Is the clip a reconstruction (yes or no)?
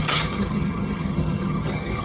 yes